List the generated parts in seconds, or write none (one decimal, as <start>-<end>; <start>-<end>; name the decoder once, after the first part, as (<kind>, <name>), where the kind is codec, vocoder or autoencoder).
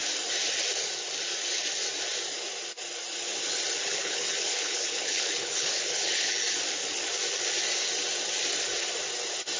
3.8-6.3 (codec, HILCodec)